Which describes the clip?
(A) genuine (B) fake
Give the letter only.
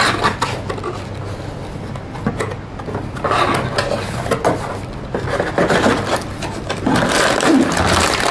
A